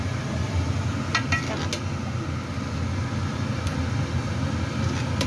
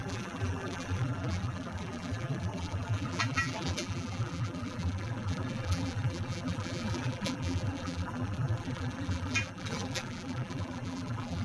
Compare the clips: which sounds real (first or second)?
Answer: first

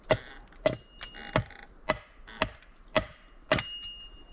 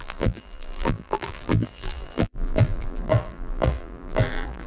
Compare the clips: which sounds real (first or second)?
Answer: first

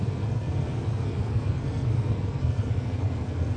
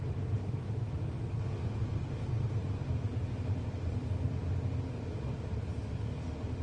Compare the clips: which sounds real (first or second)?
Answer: second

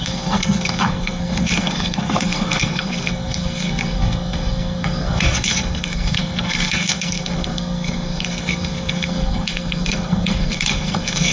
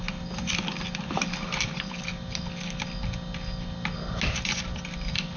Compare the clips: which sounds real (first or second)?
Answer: second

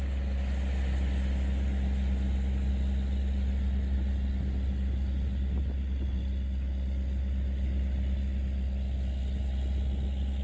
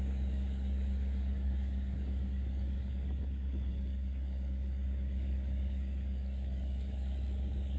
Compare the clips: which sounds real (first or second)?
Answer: first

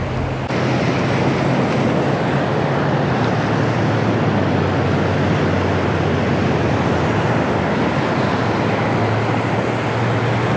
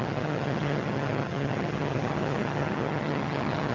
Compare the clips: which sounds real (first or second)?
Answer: first